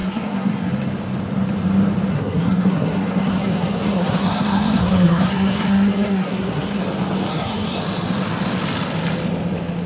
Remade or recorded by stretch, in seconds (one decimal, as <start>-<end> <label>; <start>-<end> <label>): 0.0-0.7 remade; 0.7-2.1 recorded; 2.1-6.8 remade; 6.8-7.3 recorded; 7.3-7.8 remade; 7.8-9.9 recorded